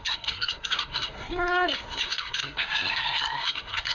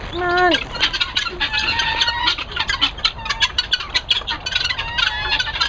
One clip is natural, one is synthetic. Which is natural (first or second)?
second